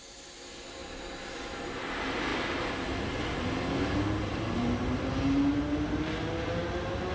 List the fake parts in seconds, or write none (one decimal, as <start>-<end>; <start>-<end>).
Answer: none